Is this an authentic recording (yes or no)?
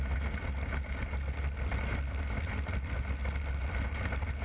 yes